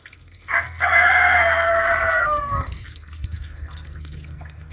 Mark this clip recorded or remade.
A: remade